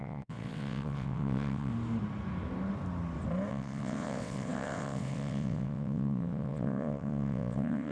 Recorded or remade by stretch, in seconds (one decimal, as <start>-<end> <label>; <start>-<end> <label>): 0.0-1.7 remade; 1.7-3.5 recorded; 3.5-7.9 remade